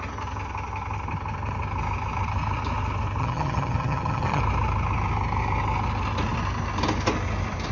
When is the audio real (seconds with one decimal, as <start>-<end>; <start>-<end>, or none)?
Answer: 0.0-3.2; 4.4-7.7